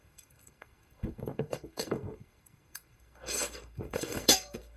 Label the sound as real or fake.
fake